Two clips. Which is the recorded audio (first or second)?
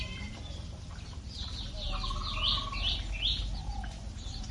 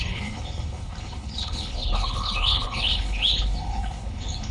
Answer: first